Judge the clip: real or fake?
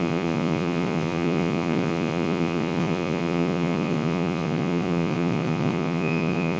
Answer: fake